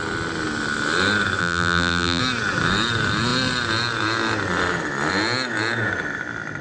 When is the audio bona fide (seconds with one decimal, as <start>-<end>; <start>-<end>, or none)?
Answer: 0.0-1.4; 2.2-6.6